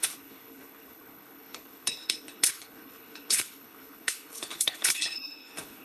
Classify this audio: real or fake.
fake